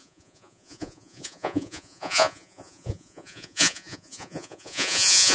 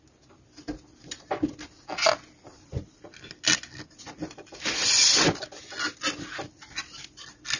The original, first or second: second